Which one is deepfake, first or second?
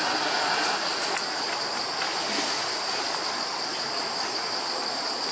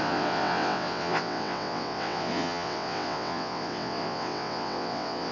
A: second